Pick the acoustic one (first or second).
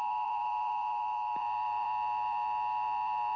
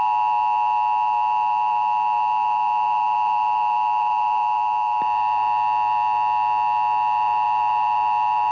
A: second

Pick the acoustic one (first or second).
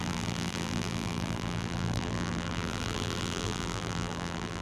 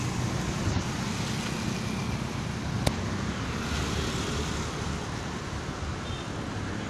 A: second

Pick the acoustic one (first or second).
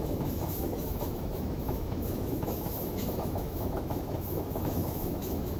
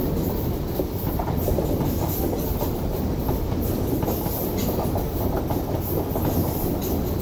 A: second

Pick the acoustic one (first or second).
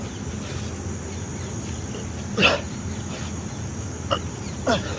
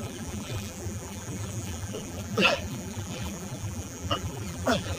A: first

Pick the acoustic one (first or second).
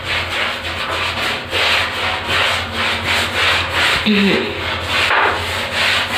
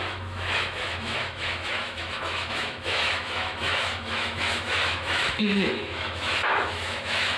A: first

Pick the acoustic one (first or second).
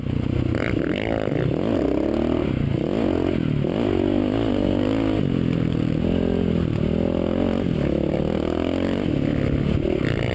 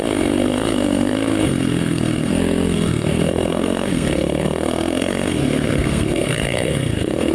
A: first